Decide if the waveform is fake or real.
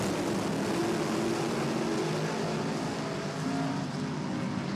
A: real